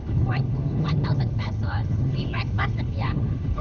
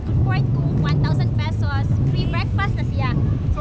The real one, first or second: second